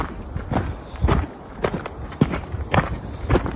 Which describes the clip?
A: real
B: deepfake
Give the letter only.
A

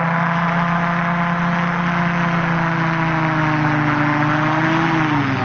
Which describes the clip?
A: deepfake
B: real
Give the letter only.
B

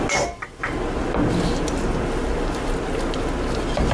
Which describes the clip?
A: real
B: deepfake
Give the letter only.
A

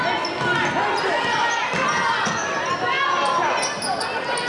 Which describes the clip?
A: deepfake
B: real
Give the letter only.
B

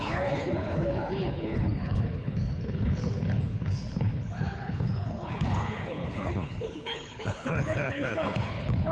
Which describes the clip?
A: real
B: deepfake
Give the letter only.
B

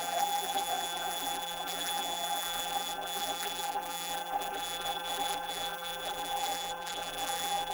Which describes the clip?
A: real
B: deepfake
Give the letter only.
B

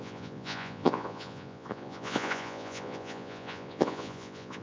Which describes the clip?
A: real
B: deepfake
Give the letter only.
B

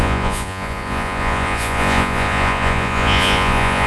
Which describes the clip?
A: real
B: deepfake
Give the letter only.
B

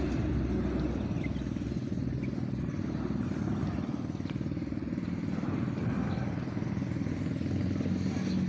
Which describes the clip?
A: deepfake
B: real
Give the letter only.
B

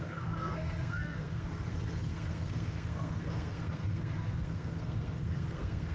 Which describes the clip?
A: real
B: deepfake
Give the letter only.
B